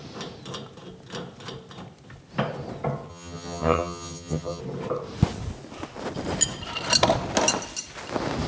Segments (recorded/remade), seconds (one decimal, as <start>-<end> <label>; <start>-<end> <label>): 0.0-3.1 recorded; 3.1-4.6 remade; 4.6-8.5 recorded